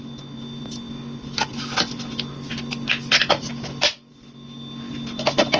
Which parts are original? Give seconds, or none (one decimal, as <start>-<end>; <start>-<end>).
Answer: 0.0-5.6